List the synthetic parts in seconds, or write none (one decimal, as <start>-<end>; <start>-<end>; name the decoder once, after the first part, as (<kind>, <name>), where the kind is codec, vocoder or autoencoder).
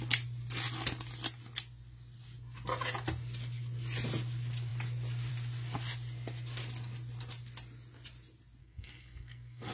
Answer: 8.6-9.7 (codec, SNAC)